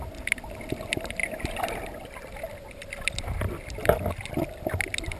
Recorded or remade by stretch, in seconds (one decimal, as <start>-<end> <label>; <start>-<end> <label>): 0.0-5.2 recorded